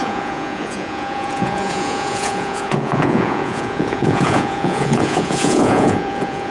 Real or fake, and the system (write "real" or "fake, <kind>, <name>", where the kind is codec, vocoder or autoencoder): fake, vocoder, Vocos